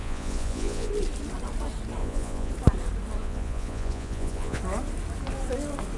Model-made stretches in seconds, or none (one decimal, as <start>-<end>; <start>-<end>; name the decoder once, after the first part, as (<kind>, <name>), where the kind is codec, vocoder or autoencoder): 0.0-0.9 (vocoder, Vocos); 2.0-2.5; 3.2-4.6